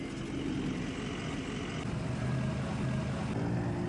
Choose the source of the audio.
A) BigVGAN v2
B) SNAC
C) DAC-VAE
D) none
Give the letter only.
D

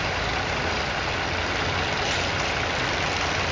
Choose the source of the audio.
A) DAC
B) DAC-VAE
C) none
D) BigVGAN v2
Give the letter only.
C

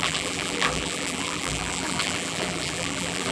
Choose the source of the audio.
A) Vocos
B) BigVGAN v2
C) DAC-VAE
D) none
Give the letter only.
B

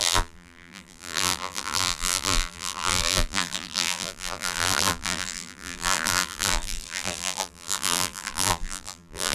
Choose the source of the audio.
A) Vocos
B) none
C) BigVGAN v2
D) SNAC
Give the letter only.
C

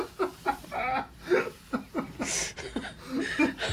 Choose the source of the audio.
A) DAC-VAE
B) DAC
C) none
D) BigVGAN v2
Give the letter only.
C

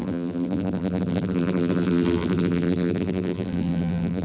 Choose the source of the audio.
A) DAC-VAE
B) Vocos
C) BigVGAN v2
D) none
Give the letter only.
C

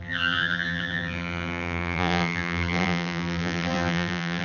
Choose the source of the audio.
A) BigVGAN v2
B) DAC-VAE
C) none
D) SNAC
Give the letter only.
A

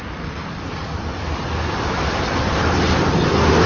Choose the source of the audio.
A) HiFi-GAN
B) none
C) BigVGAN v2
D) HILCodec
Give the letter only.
B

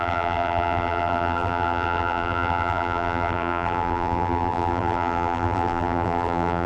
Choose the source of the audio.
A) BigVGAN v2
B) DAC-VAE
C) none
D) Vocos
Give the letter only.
A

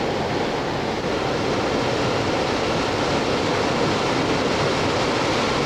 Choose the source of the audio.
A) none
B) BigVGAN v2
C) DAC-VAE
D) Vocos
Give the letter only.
A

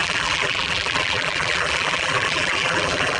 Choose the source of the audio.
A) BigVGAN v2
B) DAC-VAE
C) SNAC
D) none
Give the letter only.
A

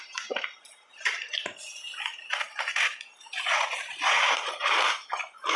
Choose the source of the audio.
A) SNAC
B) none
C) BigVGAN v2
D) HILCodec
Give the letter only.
C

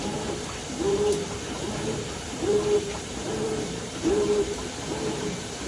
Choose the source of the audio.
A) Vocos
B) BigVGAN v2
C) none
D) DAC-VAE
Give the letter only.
B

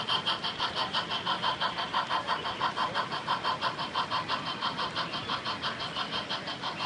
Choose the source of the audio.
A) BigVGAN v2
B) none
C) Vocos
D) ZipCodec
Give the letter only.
A